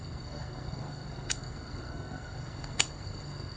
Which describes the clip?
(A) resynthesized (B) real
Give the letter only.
A